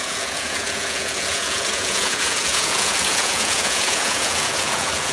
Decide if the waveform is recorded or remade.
remade